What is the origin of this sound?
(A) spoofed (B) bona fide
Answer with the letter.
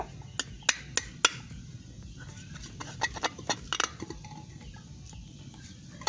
B